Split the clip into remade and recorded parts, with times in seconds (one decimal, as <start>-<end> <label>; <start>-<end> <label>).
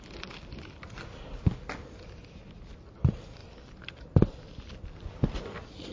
0.0-5.9 recorded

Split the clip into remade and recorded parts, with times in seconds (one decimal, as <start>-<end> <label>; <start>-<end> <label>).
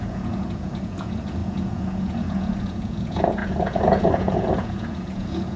0.0-5.6 remade